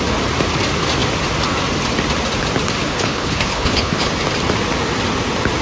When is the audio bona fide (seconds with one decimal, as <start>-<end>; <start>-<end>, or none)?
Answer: 0.0-2.9; 4.1-5.6